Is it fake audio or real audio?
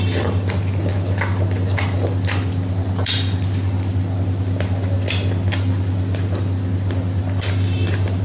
real